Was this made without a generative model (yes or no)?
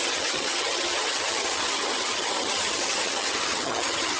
no